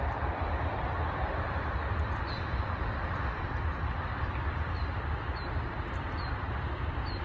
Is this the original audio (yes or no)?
no